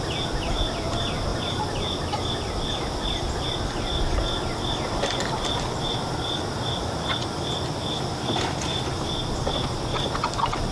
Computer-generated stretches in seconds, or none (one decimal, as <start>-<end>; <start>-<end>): none